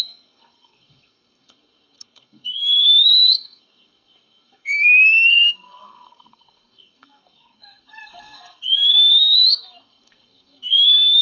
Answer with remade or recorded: remade